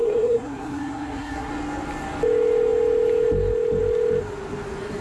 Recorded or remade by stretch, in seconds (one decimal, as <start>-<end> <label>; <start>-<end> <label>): 0.0-1.5 remade; 1.5-5.0 recorded